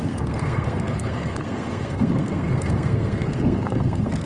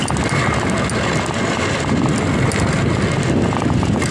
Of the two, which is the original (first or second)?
second